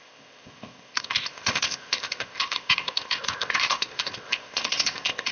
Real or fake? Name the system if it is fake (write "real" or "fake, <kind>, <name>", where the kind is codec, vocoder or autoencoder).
fake, codec, ZipCodec